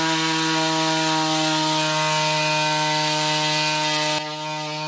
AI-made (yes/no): no